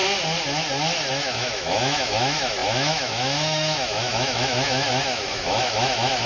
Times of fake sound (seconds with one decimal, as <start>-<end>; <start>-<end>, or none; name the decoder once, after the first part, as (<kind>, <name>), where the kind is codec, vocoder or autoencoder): 1.1-6.3 (autoencoder, DAC-VAE)